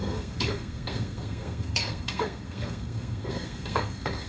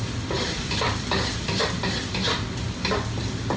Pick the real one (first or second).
second